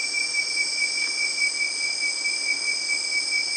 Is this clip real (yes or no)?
yes